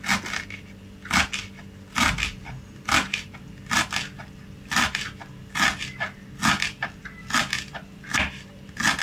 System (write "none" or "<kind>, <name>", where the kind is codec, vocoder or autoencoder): none